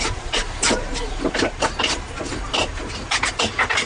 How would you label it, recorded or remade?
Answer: recorded